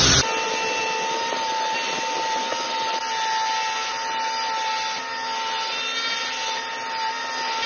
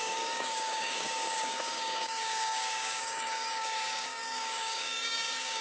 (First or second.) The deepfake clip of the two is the second